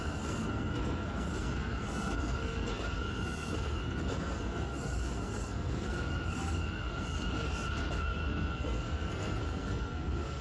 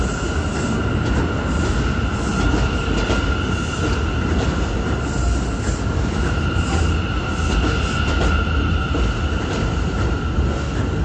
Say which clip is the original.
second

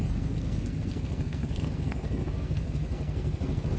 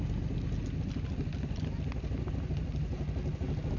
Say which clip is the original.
second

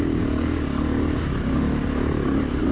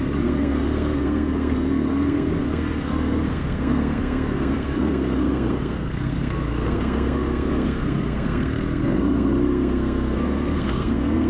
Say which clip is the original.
first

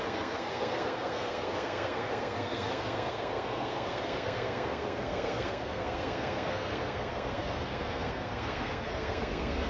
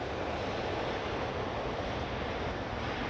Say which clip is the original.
second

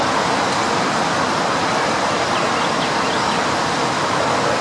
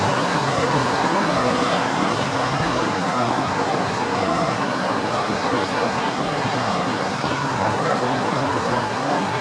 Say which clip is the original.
first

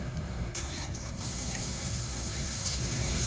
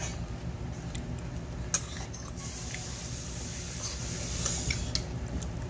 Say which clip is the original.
second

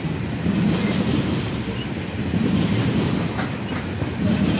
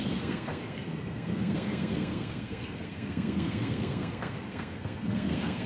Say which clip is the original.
first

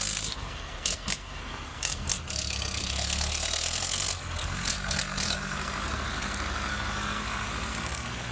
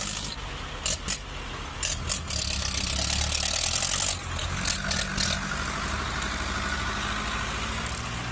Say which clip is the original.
second